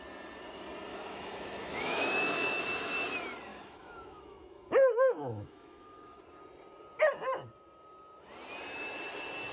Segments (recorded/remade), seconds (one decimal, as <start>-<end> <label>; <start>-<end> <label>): 0.0-0.9 recorded; 0.9-2.6 remade; 2.6-3.5 recorded; 3.5-6.2 remade; 6.2-9.5 recorded